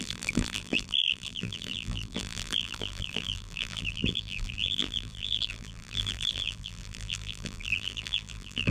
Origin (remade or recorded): remade